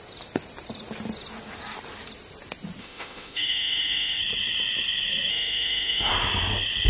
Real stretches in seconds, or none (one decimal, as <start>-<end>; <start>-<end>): 0.0-2.8; 4.2-5.3; 6.1-6.9